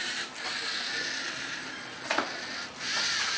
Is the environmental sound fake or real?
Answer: real